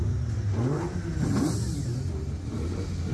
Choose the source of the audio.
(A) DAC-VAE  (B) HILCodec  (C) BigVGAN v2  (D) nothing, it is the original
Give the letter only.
D